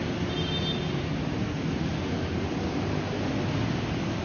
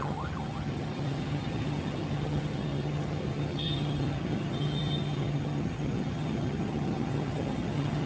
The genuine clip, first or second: first